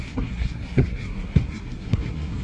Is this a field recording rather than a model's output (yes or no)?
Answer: no